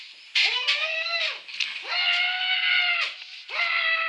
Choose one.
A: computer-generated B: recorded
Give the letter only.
B